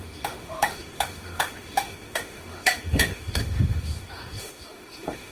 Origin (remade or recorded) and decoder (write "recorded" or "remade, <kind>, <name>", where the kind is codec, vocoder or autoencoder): remade, autoencoder, DAC-VAE